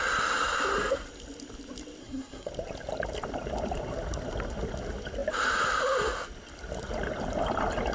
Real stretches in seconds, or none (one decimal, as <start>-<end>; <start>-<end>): 0.0-2.0; 2.5-7.9